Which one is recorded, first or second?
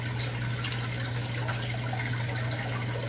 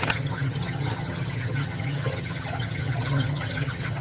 first